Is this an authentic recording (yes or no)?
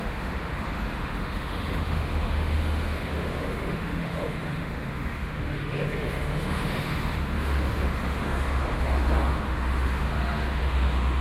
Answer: no